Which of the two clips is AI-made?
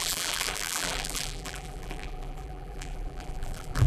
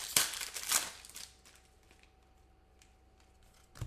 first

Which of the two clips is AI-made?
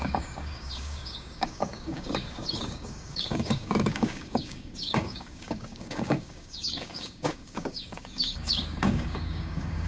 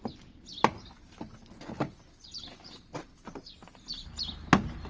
first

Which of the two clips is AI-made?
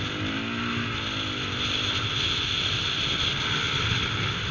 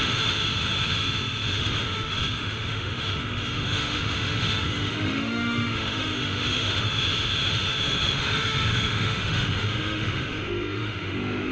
second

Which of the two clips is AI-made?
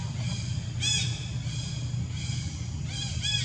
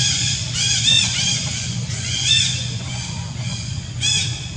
second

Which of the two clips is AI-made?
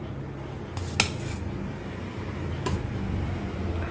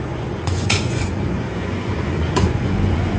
second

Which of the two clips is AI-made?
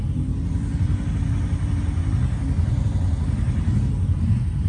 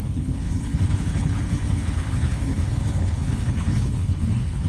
second